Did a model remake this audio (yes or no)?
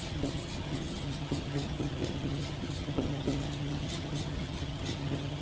yes